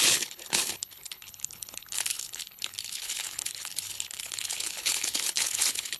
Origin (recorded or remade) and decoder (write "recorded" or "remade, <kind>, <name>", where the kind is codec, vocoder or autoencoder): remade, codec, HILCodec